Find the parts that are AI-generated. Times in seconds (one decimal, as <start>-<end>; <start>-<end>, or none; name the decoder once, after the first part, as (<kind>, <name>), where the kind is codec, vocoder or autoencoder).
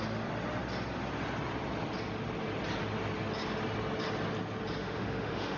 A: 4.8-5.6 (autoencoder, DAC-VAE)